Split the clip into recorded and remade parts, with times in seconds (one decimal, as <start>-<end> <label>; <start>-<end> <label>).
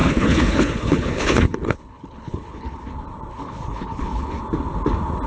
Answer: 0.0-2.9 remade; 2.9-3.3 recorded; 3.3-4.4 remade; 4.4-5.3 recorded